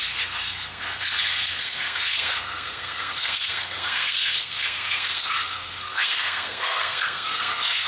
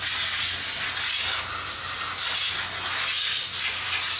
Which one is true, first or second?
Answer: second